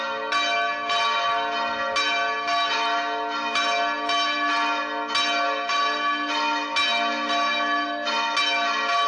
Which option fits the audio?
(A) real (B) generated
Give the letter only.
A